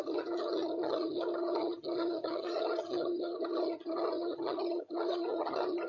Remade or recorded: remade